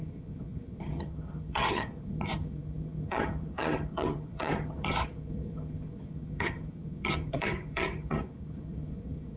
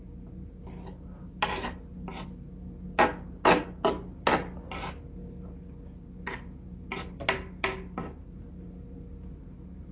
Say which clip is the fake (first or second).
first